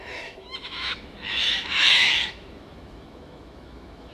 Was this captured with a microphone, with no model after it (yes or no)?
no